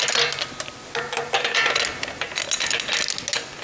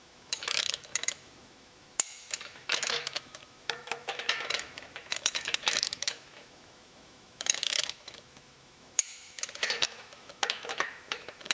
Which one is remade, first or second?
second